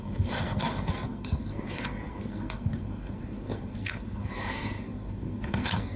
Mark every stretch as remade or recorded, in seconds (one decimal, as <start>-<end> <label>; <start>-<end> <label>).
0.0-6.0 remade